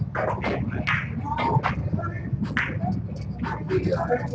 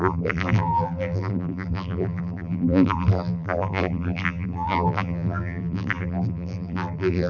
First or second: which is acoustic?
first